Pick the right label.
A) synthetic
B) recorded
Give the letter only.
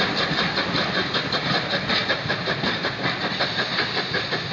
B